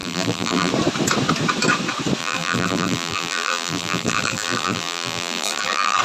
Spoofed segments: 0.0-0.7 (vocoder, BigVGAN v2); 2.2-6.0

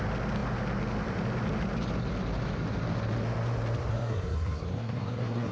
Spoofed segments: 3.9-5.5 (codec, SNAC)

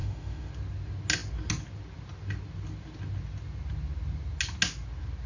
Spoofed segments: 0.0-0.5 (autoencoder, DAC-VAE)

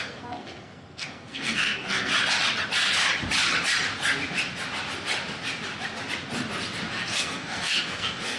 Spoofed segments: 0.0-2.1 (codec, SNAC); 6.9-8.4

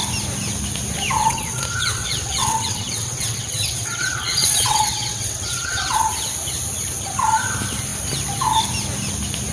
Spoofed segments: 1.2-6.1 (vocoder, WaveNeXt)